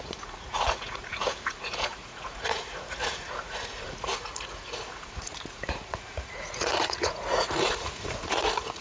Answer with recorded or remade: remade